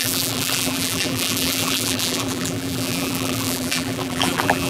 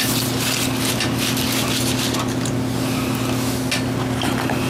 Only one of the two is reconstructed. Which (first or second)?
first